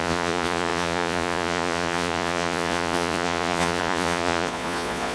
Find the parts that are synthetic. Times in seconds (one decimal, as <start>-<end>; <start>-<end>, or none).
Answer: 0.0-5.1